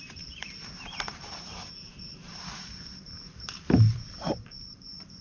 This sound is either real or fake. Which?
fake